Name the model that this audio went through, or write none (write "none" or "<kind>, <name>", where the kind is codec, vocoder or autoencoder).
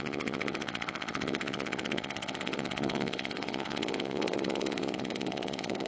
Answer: vocoder, WaveNeXt